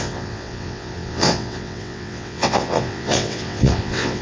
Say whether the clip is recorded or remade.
remade